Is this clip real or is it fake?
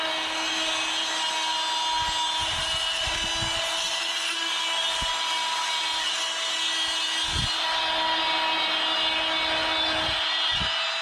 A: real